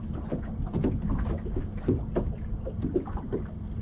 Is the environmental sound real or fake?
real